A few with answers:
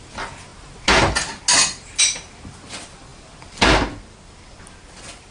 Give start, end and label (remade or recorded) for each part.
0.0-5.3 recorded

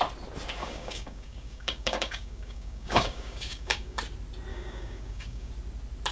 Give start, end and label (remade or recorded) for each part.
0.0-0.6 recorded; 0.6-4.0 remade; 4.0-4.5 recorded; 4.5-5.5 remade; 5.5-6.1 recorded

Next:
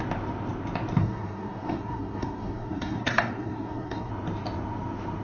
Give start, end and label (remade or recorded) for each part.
0.0-1.0 recorded; 1.0-4.1 remade; 4.1-5.2 recorded